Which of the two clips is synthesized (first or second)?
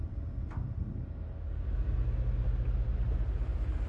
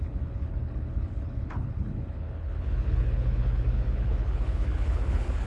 second